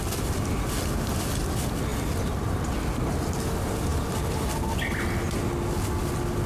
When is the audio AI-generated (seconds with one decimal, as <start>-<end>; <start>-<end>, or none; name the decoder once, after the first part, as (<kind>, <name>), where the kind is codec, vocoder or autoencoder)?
none